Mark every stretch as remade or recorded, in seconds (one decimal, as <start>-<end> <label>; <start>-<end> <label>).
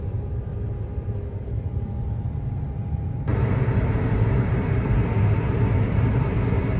0.0-0.5 remade; 0.5-1.7 recorded; 1.7-6.8 remade